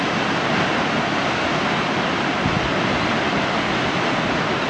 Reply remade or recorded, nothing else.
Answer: recorded